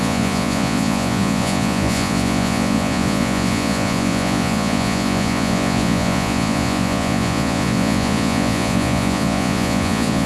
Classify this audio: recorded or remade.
remade